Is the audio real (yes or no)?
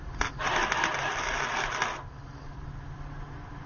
yes